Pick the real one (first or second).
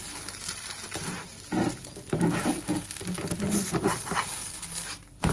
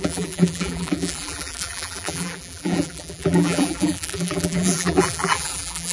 first